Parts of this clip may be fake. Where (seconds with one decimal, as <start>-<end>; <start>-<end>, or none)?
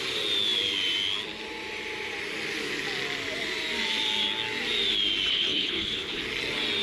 5.3-6.2